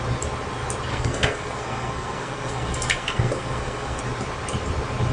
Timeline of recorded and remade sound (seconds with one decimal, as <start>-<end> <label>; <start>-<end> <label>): 0.0-0.9 recorded; 0.9-4.0 remade; 4.0-5.1 recorded